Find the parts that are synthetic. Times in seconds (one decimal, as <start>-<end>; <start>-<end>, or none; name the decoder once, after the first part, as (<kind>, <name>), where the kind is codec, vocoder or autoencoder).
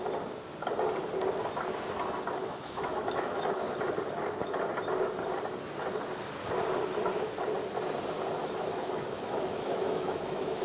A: 2.4-3.7 (autoencoder, DAC-VAE); 8.4-10.6